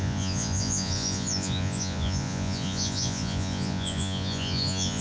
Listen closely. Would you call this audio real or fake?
fake